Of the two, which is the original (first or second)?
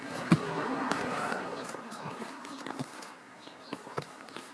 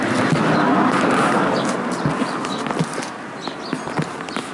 second